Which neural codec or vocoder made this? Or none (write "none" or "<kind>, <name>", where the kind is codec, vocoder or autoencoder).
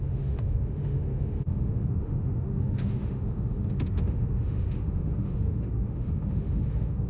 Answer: autoencoder, DAC-VAE